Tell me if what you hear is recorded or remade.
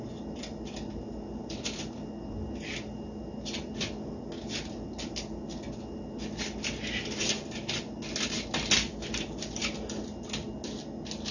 recorded